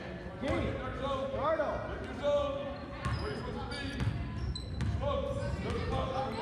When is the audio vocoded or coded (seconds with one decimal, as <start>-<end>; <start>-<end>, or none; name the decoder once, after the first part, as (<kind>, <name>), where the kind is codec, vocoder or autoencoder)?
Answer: none